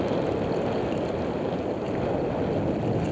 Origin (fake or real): real